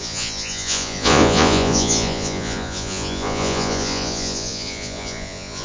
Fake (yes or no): yes